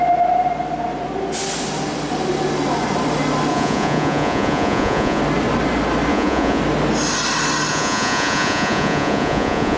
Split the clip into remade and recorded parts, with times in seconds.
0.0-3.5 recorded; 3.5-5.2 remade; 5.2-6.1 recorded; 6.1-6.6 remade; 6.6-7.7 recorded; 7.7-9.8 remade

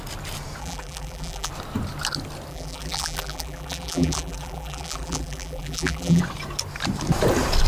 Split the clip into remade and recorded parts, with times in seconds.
0.0-0.6 recorded; 0.6-1.5 remade; 1.5-2.5 recorded; 2.5-6.2 remade; 6.2-7.7 recorded

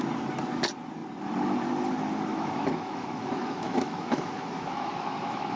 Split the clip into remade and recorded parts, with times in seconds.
0.0-2.3 recorded; 2.3-5.6 remade